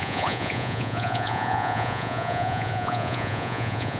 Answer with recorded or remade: remade